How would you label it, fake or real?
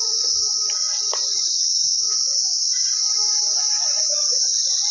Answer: real